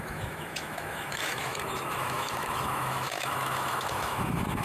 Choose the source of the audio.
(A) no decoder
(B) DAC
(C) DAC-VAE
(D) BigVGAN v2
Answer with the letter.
C